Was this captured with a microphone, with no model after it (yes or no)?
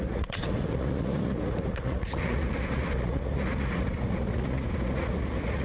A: no